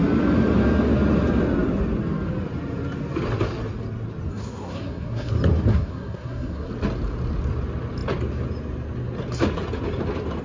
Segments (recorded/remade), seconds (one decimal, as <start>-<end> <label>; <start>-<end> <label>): 0.0-4.3 recorded; 4.3-5.3 remade; 5.3-5.7 recorded; 5.7-6.7 remade; 6.7-10.4 recorded